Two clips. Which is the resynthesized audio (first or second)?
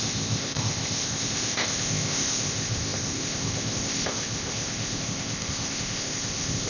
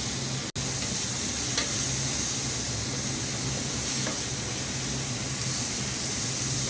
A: first